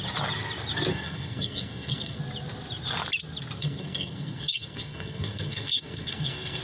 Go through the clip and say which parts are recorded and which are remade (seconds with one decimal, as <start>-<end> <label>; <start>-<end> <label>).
0.0-0.9 recorded; 0.9-2.2 remade; 2.2-3.6 recorded; 3.6-6.6 remade